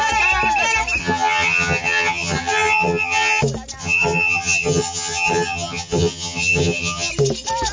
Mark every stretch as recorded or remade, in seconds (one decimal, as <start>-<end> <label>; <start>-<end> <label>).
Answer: 0.0-1.0 recorded; 1.0-3.4 remade; 3.4-3.8 recorded; 3.8-7.1 remade; 7.1-7.7 recorded